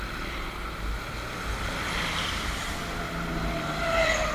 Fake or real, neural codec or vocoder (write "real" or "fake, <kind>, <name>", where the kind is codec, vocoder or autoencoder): real